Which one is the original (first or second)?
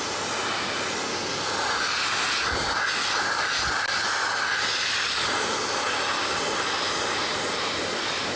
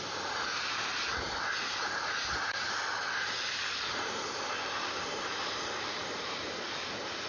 first